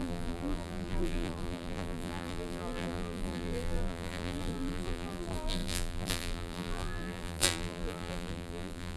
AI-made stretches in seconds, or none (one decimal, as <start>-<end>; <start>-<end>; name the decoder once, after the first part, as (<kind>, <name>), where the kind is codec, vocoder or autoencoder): 0.0-9.0 (vocoder, BigVGAN v2)